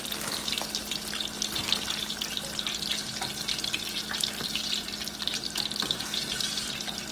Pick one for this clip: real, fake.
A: real